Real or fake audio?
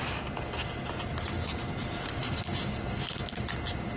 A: real